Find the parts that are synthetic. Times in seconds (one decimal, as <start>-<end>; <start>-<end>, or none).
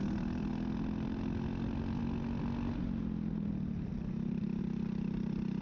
3.9-4.6